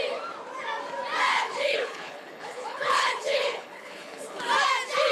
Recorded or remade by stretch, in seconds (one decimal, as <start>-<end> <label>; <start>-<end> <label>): 0.0-1.3 recorded; 1.3-4.4 remade; 4.4-5.1 recorded